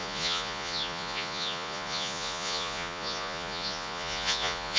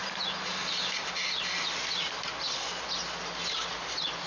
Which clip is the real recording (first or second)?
second